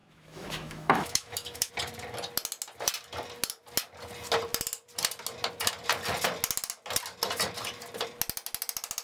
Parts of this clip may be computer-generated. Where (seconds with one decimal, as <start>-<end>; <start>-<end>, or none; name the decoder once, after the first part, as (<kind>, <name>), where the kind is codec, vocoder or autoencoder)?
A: 0.0-1.7 (autoencoder, DAC-VAE)